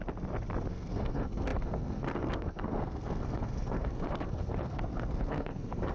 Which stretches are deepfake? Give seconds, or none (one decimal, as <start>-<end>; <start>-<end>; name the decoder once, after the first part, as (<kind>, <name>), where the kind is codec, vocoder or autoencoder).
0.7-5.9 (codec, SNAC)